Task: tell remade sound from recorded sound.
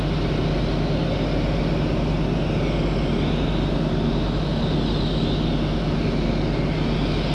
recorded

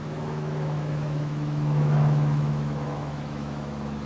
remade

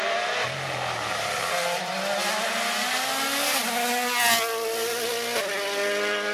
recorded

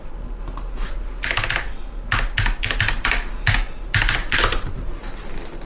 recorded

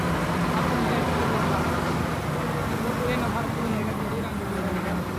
recorded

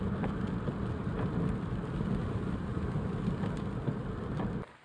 recorded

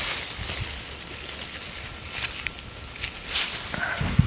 recorded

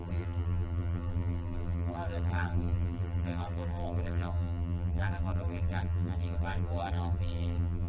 remade